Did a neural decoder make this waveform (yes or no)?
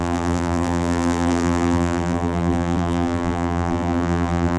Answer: yes